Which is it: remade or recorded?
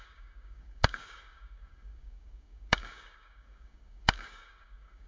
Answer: remade